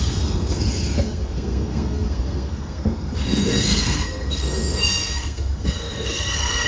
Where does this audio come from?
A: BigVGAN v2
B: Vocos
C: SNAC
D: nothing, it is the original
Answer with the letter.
C